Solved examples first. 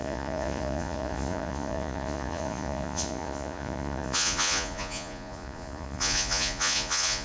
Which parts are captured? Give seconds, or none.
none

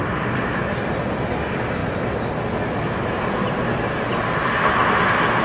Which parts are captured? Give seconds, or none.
0.0-5.4